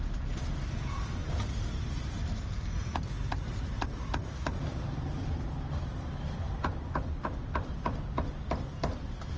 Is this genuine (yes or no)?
no